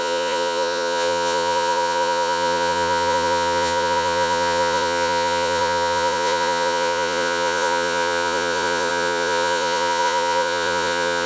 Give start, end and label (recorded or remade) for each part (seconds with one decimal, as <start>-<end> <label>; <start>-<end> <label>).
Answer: 0.0-11.3 remade